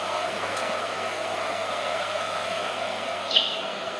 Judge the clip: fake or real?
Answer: fake